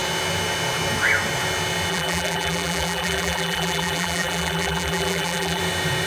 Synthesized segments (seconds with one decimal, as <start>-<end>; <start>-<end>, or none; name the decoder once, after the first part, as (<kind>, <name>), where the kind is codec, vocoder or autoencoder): 1.9-5.6 (vocoder, BigVGAN v2)